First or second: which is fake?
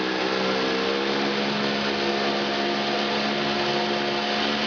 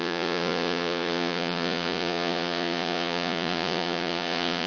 second